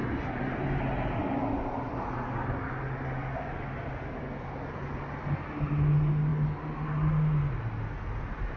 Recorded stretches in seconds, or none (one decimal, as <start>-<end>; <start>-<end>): 0.0-8.6